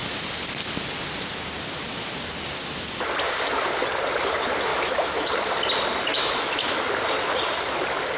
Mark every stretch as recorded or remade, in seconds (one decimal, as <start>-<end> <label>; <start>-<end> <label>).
0.0-4.7 recorded; 4.7-5.3 remade; 5.3-6.1 recorded; 6.1-6.8 remade; 6.8-8.2 recorded